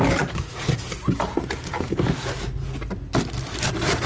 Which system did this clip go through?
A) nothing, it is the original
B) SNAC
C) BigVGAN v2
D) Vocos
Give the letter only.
A